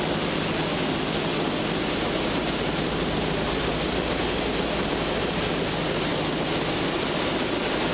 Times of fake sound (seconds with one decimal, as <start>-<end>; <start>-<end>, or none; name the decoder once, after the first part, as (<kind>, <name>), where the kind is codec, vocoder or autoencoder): none